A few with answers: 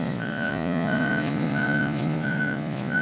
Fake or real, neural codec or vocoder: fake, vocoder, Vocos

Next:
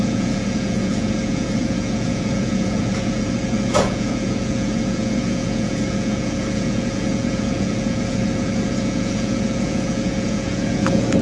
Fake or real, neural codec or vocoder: fake, vocoder, Vocos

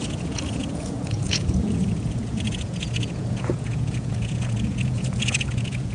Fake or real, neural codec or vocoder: fake, vocoder, Vocos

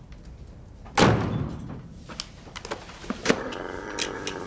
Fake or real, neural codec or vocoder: real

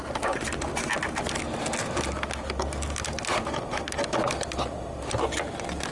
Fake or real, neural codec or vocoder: real